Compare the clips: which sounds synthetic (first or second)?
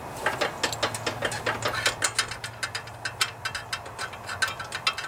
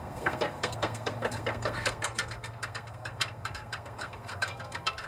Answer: second